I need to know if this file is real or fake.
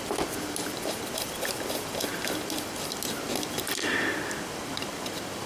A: real